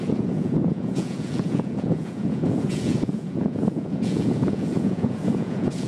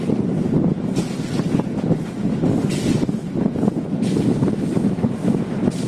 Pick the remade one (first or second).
first